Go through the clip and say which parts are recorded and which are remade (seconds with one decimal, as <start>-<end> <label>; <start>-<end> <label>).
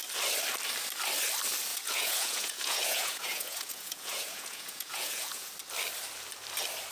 0.0-1.7 recorded; 1.7-5.5 remade; 5.5-6.9 recorded